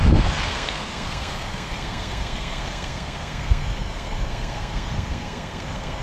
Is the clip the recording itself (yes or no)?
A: no